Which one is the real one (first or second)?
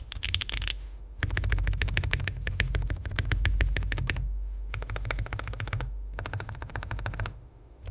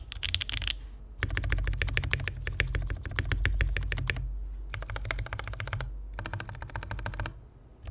second